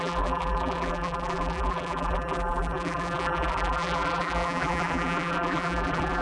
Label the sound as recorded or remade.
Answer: remade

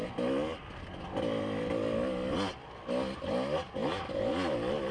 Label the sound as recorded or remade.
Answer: recorded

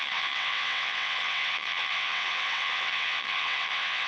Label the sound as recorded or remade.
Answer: remade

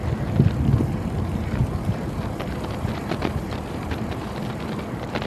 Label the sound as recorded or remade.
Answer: recorded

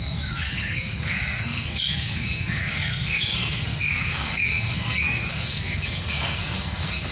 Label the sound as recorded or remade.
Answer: remade